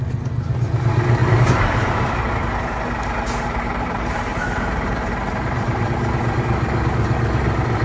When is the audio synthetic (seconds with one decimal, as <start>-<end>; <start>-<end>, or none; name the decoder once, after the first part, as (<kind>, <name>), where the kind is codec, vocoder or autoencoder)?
1.2-5.9 (vocoder, BigVGAN v2)